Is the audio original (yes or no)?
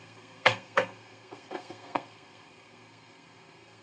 no